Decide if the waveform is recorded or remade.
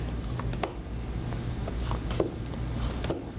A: recorded